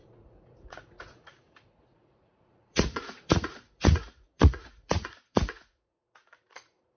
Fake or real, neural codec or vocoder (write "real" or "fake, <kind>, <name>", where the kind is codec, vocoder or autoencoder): fake, vocoder, Vocos